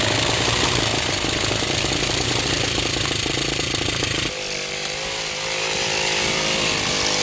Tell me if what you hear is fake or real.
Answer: real